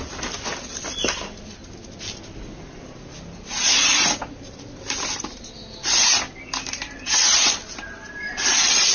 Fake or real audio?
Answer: fake